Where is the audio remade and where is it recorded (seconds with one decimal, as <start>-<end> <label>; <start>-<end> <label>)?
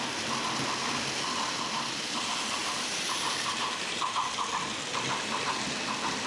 0.0-2.6 recorded; 2.6-4.0 remade; 4.0-6.3 recorded